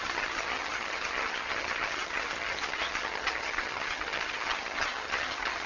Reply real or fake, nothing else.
fake